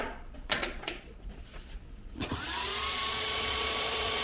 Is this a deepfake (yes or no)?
yes